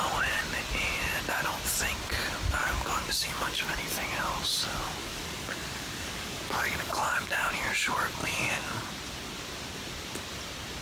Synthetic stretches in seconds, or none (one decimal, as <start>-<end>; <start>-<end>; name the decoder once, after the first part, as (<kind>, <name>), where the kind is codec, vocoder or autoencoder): 2.6-3.5 (codec, DAC); 5.0-7.5; 8.2-8.8